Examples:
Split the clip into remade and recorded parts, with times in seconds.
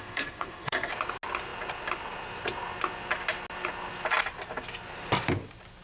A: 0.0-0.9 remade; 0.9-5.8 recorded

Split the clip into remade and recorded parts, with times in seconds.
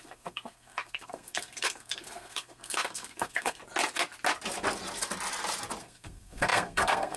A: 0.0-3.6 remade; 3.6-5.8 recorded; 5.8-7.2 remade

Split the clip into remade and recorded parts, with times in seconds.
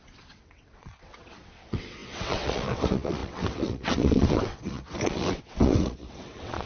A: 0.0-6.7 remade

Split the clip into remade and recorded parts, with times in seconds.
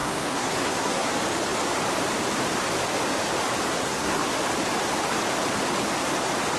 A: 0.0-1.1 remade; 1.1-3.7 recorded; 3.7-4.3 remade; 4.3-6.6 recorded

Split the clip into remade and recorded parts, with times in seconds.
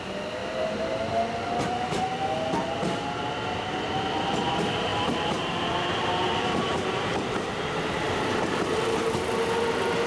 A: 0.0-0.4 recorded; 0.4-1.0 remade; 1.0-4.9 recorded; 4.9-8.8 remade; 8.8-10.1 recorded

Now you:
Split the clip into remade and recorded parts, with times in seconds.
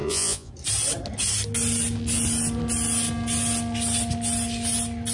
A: 0.0-0.5 remade; 0.5-5.1 recorded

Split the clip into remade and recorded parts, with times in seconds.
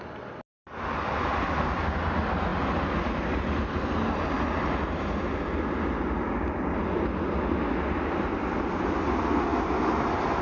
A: 0.0-10.4 recorded